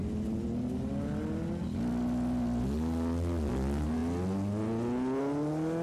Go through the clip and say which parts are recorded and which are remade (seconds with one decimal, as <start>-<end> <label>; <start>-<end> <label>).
0.0-5.8 recorded